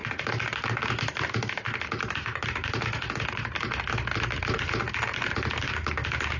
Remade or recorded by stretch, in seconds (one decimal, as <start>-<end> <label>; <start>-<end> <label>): 0.0-6.4 recorded